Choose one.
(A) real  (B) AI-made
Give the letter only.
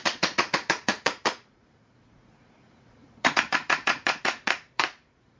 B